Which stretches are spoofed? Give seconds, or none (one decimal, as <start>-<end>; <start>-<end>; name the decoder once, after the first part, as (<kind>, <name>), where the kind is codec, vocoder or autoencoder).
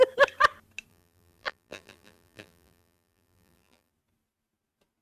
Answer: 0.9-3.9 (vocoder, BigVGAN v2)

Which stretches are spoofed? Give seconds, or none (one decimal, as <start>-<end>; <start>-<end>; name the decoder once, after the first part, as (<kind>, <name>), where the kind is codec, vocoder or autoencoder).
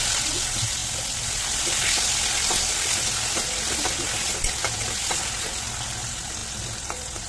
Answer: none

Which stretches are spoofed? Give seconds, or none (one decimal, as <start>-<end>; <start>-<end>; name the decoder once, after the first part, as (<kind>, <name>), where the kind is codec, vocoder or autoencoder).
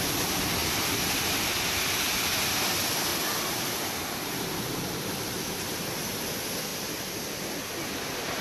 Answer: 3.1-5.6 (vocoder, BigVGAN v2); 6.7-7.2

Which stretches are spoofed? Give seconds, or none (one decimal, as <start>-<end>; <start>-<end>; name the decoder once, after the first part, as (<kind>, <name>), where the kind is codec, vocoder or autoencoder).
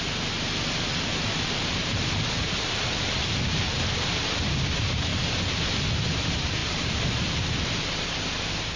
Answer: 0.0-5.1 (vocoder, BigVGAN v2); 5.8-8.8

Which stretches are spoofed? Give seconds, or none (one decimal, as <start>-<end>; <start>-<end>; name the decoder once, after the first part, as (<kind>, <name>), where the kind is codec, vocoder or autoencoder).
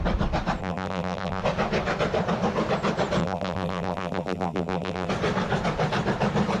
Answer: 0.6-1.4 (vocoder, BigVGAN v2); 3.2-5.1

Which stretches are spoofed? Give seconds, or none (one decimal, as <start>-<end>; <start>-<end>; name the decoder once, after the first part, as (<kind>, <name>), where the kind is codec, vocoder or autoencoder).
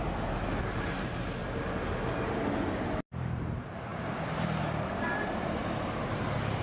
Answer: 0.0-1.4 (vocoder, BigVGAN v2); 2.8-5.6; 6.1-6.6